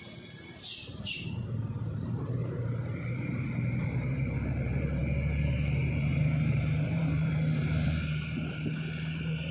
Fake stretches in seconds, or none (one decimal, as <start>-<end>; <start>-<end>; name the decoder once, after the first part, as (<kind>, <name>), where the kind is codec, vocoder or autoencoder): 0.9-5.0 (vocoder, BigVGAN v2); 5.8-7.9